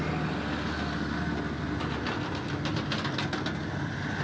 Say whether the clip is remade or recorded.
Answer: recorded